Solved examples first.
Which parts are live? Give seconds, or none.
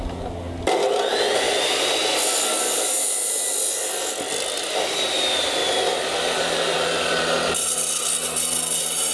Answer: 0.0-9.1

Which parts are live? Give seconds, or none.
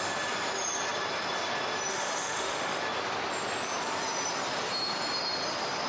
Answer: 0.0-1.9; 2.8-5.9